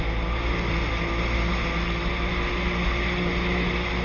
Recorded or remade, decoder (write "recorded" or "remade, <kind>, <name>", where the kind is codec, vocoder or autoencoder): recorded